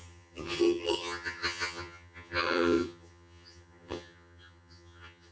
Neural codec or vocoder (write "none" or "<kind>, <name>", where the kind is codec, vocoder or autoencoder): vocoder, HiFi-GAN